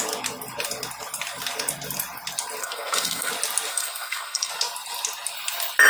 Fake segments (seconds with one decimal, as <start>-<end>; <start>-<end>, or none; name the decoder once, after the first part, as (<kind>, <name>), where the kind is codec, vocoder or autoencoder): 2.6-3.3 (codec, SNAC); 3.7-4.5